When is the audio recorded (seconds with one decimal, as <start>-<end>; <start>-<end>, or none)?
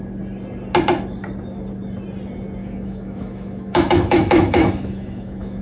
0.0-2.6